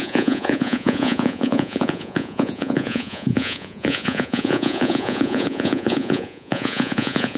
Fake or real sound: fake